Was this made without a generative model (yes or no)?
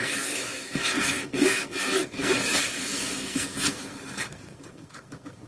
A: no